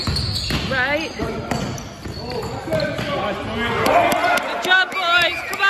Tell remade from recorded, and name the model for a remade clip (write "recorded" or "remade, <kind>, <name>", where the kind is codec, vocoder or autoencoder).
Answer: recorded